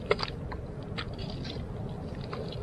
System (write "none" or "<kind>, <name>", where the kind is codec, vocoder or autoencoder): none